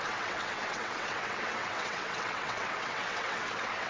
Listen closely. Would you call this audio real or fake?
fake